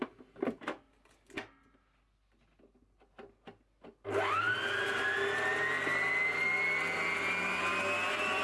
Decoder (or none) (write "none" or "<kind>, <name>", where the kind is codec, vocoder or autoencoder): none